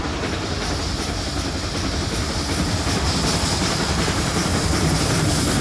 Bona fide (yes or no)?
yes